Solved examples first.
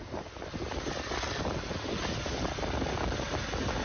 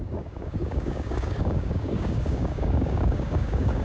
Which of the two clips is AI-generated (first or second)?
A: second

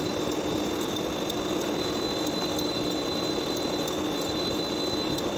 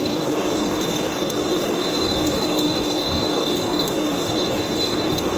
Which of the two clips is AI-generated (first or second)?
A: second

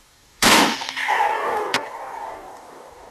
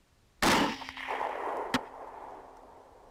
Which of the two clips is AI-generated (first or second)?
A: first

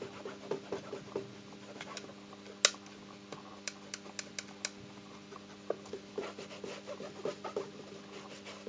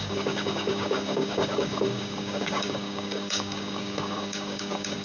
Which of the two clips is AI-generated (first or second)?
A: second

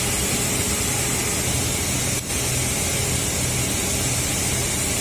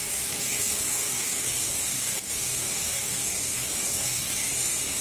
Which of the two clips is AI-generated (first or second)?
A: second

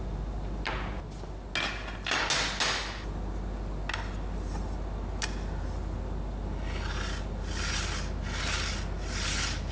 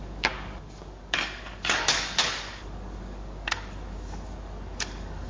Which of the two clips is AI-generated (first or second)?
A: second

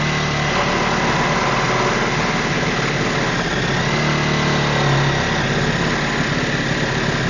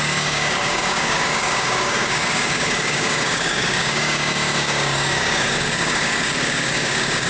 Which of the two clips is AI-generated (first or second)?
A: second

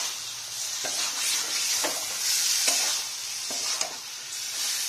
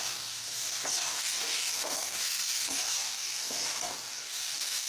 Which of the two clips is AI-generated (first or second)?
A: second